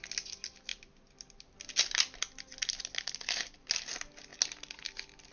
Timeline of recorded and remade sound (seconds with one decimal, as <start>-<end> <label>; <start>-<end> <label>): 0.0-5.3 recorded

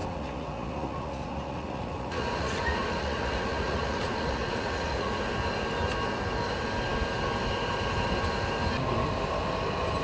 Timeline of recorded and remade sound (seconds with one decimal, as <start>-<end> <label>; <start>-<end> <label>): 0.0-5.2 remade; 5.2-10.0 recorded

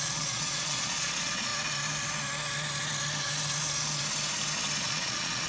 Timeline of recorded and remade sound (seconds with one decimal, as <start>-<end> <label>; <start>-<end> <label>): 0.0-1.5 remade; 1.5-4.8 recorded; 4.8-5.5 remade

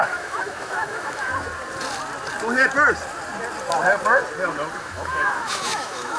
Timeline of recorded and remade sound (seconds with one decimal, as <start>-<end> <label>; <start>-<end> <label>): 0.0-1.3 remade; 1.3-4.8 recorded; 4.8-6.2 remade

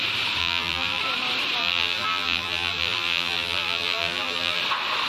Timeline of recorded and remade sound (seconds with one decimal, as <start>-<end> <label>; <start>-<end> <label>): 0.0-0.4 recorded; 0.4-1.0 remade; 1.0-1.6 recorded; 1.6-4.6 remade; 4.6-5.1 recorded